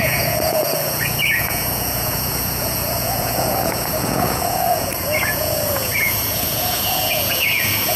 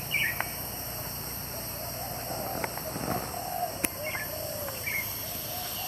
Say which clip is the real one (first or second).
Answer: second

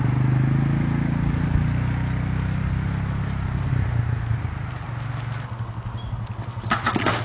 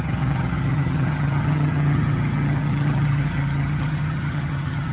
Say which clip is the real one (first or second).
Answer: first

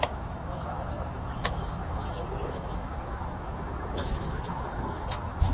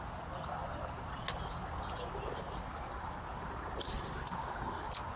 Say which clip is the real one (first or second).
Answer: second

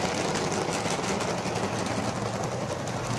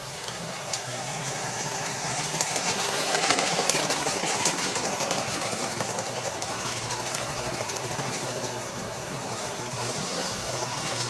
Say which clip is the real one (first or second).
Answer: first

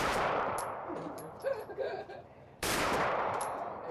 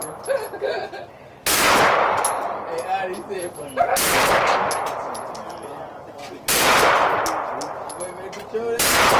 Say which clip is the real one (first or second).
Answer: second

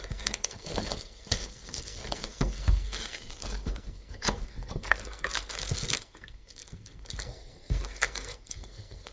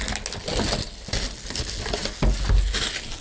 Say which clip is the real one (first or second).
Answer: second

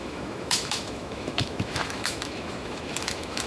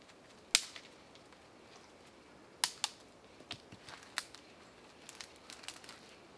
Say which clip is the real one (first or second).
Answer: second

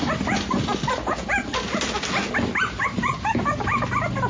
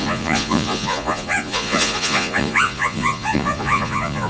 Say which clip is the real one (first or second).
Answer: first